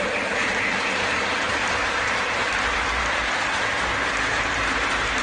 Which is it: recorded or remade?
remade